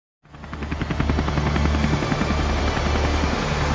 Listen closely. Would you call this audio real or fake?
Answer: real